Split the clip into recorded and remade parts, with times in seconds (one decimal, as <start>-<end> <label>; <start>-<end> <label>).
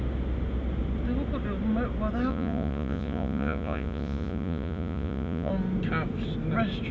0.0-2.3 recorded; 2.3-5.5 remade; 5.5-6.9 recorded